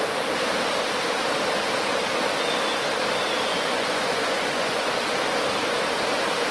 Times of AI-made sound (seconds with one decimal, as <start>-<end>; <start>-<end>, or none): 3.5-4.9